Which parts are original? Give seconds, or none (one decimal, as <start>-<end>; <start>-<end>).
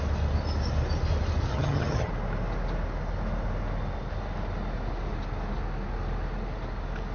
0.0-1.5; 2.1-7.1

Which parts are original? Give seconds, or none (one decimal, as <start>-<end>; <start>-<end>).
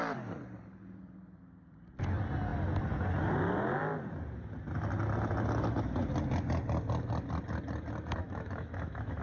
0.0-8.2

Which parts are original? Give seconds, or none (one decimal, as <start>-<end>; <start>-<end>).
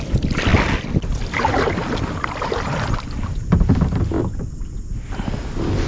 0.0-5.9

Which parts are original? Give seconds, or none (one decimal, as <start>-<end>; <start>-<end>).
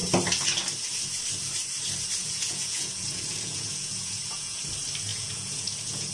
0.0-2.2; 4.6-5.1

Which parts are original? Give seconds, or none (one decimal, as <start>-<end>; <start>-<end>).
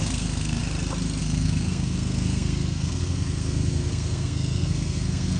0.6-1.2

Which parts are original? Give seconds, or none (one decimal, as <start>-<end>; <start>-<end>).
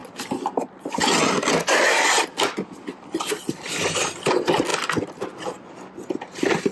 0.0-6.7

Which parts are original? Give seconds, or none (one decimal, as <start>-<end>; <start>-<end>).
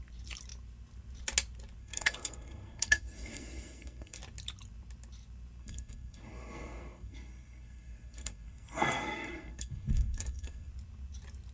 0.0-1.8; 4.2-5.6; 10.7-11.5